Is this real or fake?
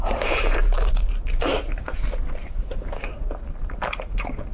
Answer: fake